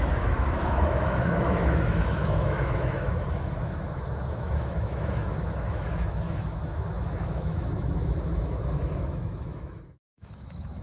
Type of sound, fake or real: fake